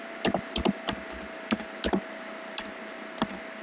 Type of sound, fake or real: real